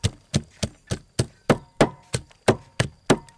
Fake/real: real